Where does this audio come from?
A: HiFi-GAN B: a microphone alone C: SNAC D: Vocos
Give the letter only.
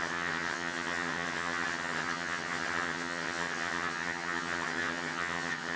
A